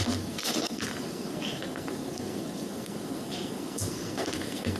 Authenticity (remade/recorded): remade